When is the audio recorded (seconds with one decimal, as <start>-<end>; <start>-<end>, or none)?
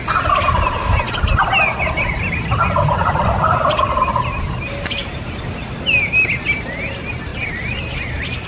0.0-8.5